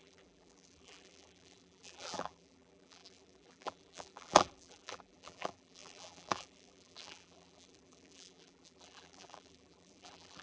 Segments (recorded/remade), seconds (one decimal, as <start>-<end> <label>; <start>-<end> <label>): 0.0-10.4 remade